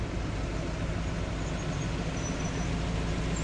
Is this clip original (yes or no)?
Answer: yes